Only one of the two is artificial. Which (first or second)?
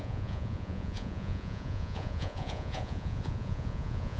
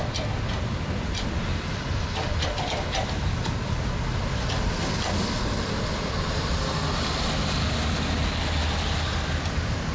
first